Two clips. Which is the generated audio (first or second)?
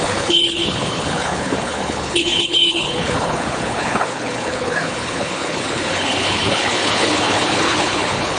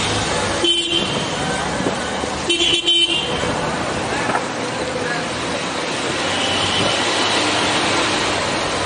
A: first